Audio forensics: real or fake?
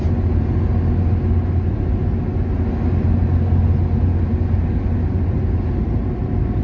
real